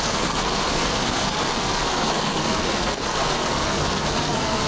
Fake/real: fake